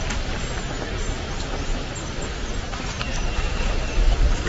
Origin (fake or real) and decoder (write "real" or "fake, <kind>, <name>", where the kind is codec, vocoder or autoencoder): real